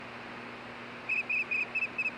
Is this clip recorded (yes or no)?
yes